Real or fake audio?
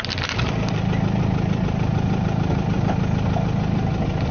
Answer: real